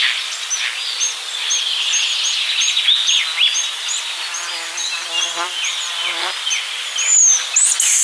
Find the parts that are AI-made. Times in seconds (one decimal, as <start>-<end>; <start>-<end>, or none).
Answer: none